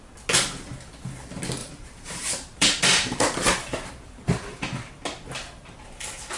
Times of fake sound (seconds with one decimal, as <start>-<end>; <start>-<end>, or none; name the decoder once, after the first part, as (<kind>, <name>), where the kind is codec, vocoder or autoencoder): 1.6-4.9 (vocoder, BigVGAN v2)